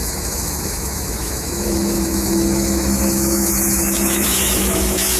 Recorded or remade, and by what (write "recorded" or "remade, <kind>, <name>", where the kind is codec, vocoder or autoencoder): remade, autoencoder, DAC-VAE